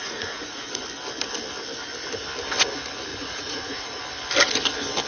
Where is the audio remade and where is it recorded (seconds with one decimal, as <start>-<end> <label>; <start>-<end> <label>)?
0.0-0.8 remade; 0.8-3.1 recorded; 3.1-4.0 remade; 4.0-5.1 recorded